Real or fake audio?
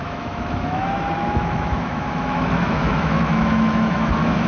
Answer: fake